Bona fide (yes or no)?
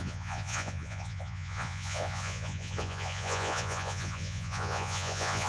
no